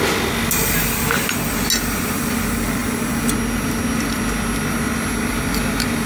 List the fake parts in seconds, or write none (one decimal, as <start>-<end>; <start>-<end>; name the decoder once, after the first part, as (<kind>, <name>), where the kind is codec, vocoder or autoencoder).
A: none